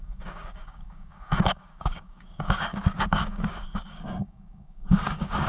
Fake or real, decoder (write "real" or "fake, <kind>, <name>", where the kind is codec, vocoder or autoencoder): fake, codec, DAC